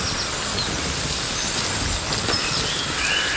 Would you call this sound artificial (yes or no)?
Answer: no